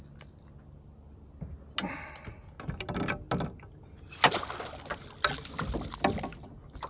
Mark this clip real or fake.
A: real